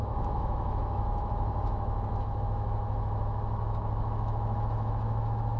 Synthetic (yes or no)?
yes